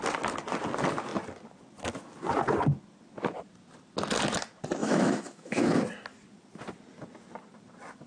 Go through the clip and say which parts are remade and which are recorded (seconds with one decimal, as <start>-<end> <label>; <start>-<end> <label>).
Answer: 0.0-4.8 recorded; 4.8-5.7 remade; 5.7-8.1 recorded